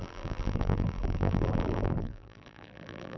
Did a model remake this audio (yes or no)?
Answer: yes